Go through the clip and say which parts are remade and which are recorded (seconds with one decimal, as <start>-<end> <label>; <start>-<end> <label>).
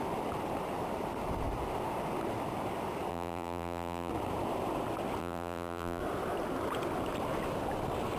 0.0-3.1 recorded; 3.1-4.1 remade; 4.1-5.2 recorded; 5.2-6.0 remade; 6.0-8.2 recorded